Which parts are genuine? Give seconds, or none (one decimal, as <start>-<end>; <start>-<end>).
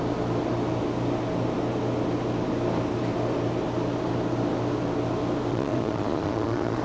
0.0-5.5